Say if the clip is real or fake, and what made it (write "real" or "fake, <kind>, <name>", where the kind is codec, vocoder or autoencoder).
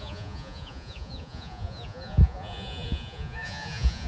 fake, vocoder, Vocos